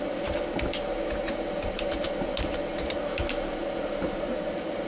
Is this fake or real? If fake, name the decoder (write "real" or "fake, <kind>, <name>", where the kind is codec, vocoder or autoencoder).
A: fake, vocoder, BigVGAN v2